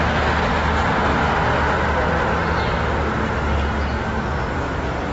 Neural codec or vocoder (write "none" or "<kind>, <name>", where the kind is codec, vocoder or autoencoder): none